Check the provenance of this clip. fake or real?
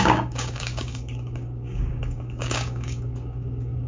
fake